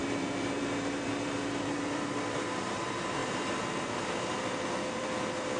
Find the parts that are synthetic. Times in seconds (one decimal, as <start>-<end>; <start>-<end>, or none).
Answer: 0.0-3.2; 4.0-5.6